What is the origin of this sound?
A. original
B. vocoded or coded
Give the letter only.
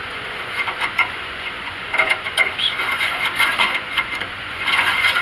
B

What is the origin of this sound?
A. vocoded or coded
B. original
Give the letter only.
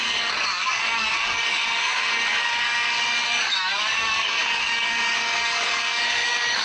A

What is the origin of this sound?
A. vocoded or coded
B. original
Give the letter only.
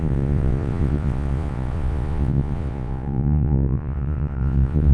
A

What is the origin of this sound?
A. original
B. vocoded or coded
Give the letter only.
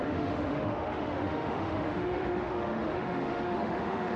B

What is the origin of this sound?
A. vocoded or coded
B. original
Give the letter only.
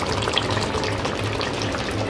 B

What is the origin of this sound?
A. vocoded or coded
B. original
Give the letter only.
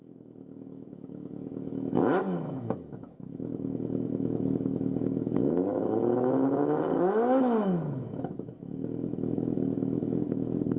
A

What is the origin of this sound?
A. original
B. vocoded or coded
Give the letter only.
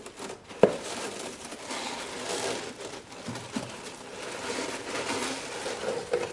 A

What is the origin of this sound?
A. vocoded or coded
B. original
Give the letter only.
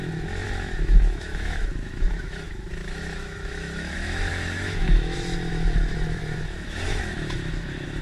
A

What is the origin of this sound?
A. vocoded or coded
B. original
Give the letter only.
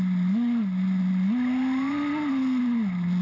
B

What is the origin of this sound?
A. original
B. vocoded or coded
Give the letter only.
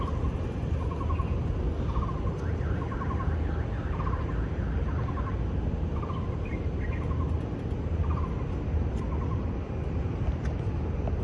A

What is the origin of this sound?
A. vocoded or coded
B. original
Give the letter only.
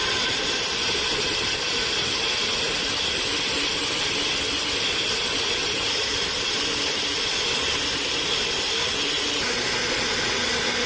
B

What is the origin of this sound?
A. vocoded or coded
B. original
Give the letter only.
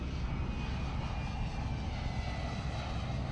B